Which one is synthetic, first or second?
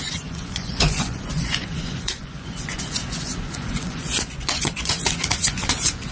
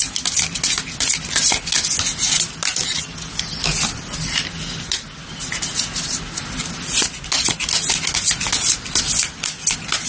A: first